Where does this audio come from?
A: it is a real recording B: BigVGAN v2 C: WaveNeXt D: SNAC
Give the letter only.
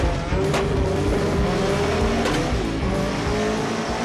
A